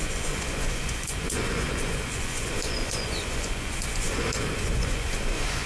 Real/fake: fake